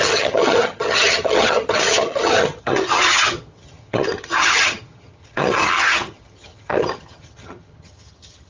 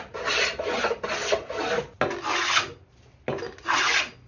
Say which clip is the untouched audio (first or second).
second